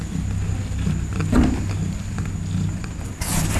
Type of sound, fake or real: real